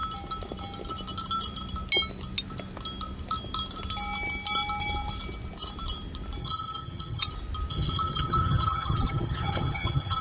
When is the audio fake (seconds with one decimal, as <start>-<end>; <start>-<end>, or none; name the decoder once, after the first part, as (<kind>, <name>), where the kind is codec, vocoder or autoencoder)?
6.4-7.3 (vocoder, HiFi-GAN); 7.7-10.2